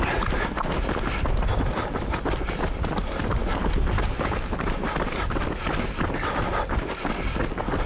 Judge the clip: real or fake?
real